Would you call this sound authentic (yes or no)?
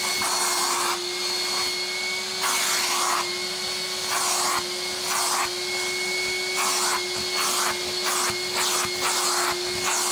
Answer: yes